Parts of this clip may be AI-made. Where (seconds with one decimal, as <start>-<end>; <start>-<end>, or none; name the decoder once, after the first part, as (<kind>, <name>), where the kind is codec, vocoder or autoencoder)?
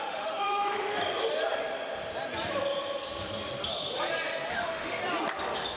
0.0-1.0 (autoencoder, DAC-VAE); 4.5-5.0